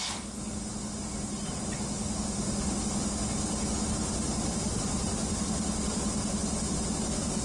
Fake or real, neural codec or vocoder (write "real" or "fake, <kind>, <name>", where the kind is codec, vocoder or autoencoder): real